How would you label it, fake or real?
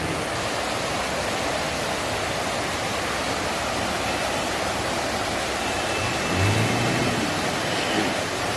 real